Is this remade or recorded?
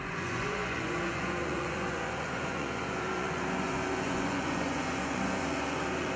remade